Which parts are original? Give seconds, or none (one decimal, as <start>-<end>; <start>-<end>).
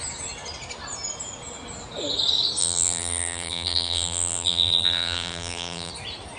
0.0-2.6; 5.9-6.4